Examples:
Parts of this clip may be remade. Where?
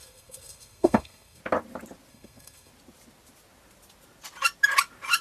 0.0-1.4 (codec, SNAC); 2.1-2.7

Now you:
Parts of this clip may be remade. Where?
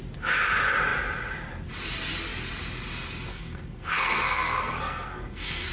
3.3-5.7 (codec, SNAC)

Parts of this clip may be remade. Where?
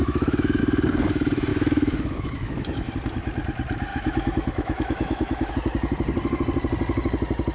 0.0-0.6 (autoencoder, DAC-VAE); 1.5-2.9; 3.9-5.5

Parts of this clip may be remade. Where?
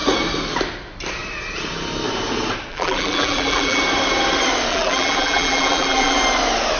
2.7-3.8 (vocoder, BigVGAN v2); 4.7-6.2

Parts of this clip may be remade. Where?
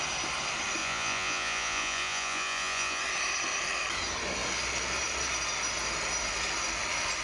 0.8-3.0 (vocoder, Vocos)